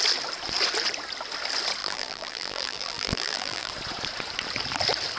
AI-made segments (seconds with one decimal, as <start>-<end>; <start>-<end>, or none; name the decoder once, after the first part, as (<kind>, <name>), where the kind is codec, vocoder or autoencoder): 1.8-3.7 (vocoder, BigVGAN v2)